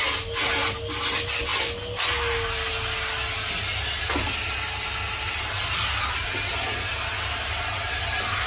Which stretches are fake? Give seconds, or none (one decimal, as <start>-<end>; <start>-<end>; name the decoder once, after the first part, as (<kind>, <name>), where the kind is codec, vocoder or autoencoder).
none